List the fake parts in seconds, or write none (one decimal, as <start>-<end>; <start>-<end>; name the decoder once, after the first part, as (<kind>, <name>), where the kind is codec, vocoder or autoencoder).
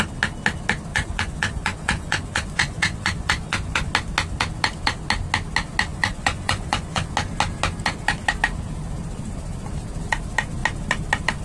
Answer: 0.9-3.9 (vocoder, Vocos); 5.9-7.1